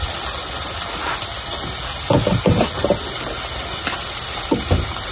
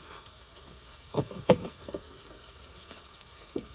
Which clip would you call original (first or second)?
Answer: first